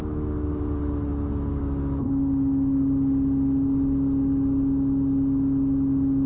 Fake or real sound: real